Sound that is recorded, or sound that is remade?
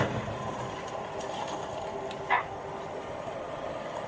recorded